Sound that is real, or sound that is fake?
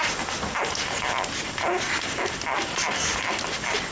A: real